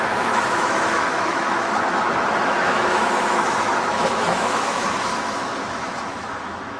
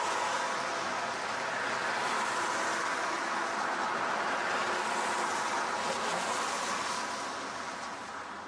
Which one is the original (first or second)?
second